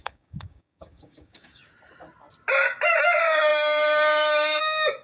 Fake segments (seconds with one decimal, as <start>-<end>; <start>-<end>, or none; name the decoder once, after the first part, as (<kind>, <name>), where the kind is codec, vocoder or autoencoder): 0.0-1.6 (codec, DAC); 3.0-5.0